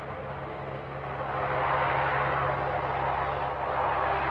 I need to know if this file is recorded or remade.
recorded